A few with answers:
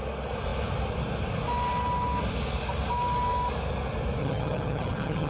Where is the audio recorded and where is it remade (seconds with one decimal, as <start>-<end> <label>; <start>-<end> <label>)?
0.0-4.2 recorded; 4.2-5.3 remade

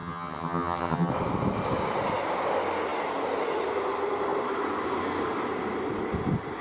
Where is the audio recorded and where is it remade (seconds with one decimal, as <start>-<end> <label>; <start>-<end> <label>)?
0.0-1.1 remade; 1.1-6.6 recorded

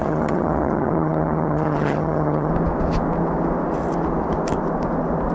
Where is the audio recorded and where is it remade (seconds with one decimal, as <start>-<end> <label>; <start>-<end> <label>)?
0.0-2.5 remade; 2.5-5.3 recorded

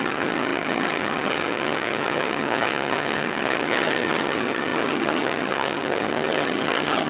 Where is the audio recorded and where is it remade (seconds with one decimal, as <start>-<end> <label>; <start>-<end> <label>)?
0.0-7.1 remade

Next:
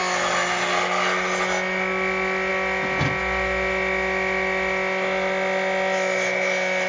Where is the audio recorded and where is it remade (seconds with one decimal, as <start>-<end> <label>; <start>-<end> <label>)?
0.0-6.9 recorded